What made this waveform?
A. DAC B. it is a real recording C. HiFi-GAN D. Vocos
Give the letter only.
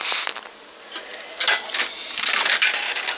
B